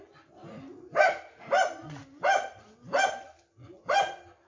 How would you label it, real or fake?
real